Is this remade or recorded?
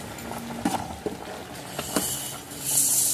recorded